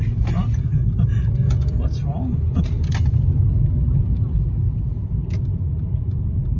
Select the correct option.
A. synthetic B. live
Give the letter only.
B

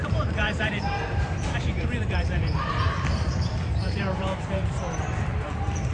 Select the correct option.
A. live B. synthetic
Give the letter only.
B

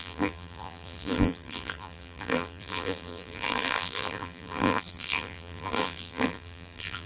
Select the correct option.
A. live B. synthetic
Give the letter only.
B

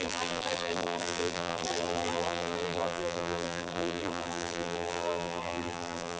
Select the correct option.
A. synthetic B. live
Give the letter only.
A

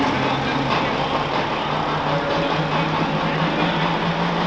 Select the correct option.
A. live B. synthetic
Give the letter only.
A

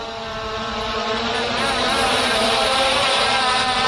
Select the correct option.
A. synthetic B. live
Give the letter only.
A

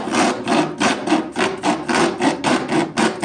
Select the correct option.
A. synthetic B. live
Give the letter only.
B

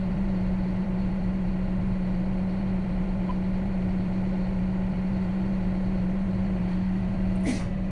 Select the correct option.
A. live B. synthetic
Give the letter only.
B